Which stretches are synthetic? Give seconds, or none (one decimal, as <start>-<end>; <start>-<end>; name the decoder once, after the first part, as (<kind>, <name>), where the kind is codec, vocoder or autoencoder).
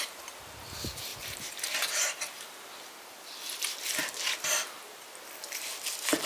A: none